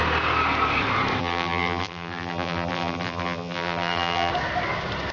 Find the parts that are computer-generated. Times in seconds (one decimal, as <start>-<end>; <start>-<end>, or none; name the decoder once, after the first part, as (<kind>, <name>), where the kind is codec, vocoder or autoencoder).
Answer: 1.2-4.3 (vocoder, BigVGAN v2)